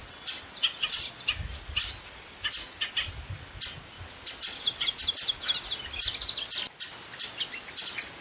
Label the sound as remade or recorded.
recorded